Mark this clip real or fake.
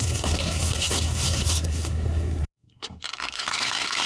fake